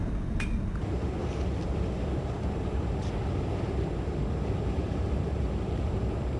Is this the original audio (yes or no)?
yes